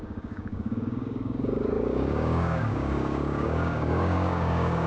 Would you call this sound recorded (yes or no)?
no